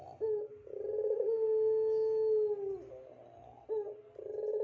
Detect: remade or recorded recorded